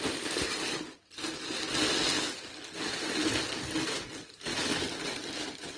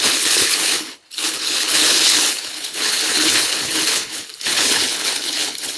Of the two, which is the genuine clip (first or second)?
first